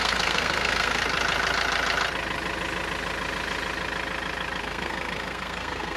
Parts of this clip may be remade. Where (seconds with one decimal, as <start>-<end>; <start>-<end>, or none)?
0.0-1.0; 4.6-6.0